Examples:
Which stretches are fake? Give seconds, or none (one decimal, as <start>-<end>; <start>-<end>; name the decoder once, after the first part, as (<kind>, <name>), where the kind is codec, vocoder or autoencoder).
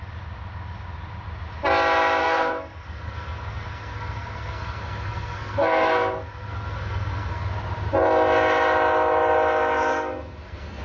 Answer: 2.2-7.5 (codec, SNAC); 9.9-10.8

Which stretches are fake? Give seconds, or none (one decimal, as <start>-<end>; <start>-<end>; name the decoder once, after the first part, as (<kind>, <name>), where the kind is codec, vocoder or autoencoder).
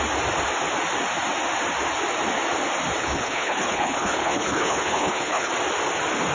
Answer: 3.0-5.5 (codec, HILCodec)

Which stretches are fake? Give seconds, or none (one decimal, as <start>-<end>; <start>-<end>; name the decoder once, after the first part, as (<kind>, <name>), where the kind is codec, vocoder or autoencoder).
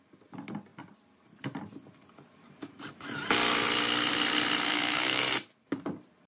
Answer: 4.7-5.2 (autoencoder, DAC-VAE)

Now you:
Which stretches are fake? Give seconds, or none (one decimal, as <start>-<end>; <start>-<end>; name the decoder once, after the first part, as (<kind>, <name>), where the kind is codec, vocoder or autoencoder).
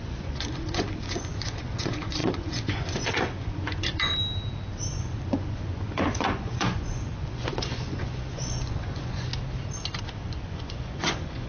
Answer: 0.0-4.1 (vocoder, Vocos); 4.9-9.3; 10.0-11.5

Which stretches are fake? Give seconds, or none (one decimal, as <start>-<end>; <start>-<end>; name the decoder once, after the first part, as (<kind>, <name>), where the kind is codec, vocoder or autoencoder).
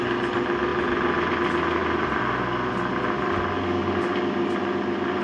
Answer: none